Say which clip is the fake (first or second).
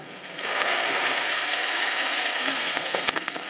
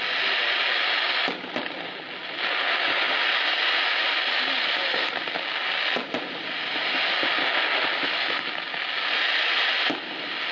first